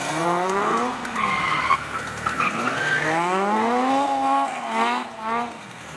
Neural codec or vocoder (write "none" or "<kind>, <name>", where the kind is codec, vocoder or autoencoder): codec, SNAC